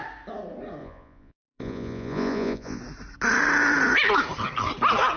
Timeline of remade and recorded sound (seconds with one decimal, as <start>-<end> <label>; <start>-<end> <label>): 0.0-0.8 recorded; 0.8-2.8 remade; 2.8-5.2 recorded